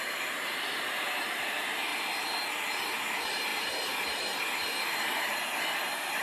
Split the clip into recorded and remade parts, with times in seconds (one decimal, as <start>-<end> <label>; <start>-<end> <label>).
0.0-1.9 remade; 1.9-2.7 recorded; 2.7-6.2 remade